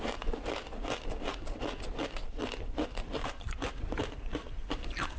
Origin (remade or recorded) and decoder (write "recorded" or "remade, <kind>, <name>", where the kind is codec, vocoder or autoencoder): remade, vocoder, BigVGAN v2